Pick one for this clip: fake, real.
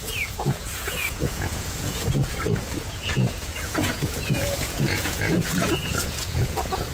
fake